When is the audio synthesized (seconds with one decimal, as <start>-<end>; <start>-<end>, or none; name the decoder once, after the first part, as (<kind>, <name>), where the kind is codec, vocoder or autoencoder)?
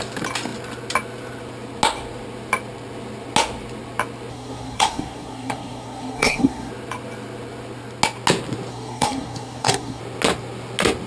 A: 4.3-6.7 (codec, SNAC); 8.7-10.0